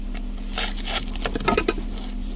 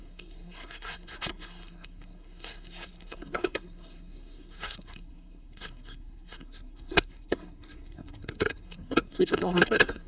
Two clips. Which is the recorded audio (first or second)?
first